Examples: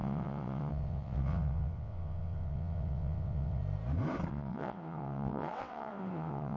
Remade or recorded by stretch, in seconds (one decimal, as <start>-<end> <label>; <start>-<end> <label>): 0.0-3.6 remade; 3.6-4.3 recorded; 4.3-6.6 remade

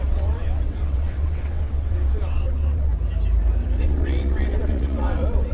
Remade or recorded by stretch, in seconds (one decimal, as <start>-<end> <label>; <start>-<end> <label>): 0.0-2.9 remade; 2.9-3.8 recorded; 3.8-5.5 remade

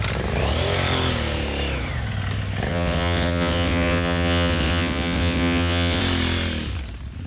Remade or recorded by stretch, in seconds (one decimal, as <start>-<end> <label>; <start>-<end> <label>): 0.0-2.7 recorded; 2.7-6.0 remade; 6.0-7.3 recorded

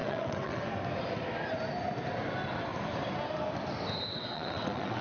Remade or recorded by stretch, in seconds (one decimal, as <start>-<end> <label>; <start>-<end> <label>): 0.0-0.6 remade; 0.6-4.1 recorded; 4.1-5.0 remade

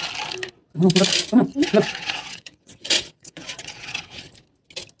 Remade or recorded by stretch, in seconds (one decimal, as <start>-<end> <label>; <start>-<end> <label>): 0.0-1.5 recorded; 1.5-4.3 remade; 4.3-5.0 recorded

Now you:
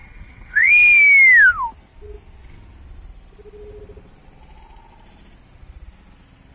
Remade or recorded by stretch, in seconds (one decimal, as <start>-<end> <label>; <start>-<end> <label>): 0.0-0.7 remade; 0.7-6.5 recorded

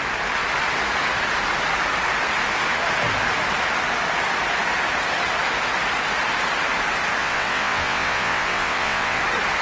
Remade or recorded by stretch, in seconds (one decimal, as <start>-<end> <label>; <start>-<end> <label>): 0.0-7.2 recorded; 7.2-9.2 remade; 9.2-9.6 recorded